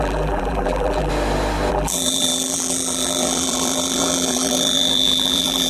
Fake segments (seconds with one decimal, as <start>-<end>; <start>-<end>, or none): 0.0-1.1; 1.7-5.7